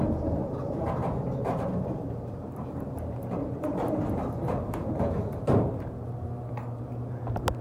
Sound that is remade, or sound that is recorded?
remade